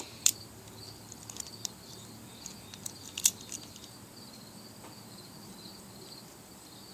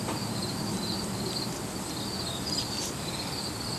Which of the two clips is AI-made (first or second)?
first